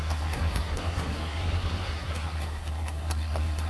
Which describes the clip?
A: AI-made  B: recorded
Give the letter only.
A